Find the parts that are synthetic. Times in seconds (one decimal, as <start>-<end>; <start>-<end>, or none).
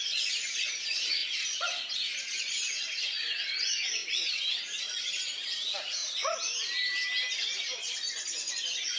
0.0-6.0